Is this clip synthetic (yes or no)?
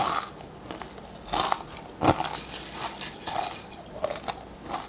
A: no